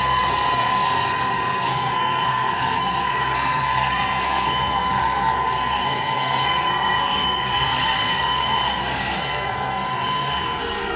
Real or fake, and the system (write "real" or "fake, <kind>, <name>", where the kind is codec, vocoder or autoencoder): fake, codec, SNAC